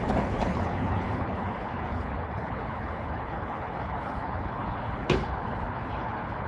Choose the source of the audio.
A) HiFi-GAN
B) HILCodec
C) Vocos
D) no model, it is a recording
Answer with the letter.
B